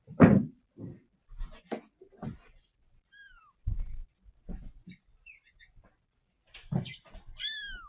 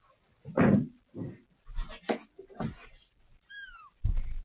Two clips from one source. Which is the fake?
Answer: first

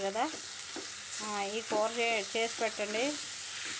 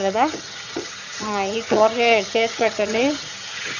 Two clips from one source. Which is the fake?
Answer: second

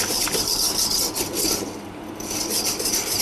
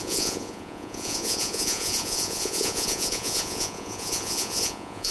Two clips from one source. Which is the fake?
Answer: second